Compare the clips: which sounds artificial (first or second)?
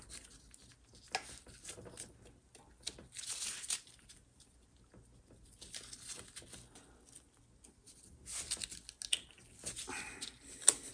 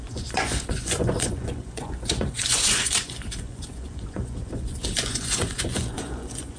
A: second